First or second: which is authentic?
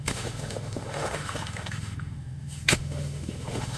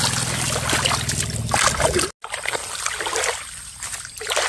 second